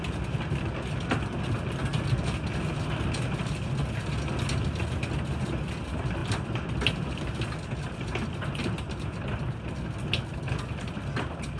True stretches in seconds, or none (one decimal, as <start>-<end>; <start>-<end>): 0.0-11.6